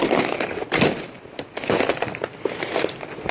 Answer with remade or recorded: recorded